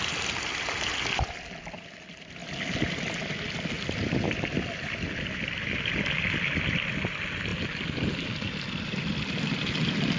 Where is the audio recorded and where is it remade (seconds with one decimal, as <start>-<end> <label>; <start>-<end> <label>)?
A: 0.0-10.2 recorded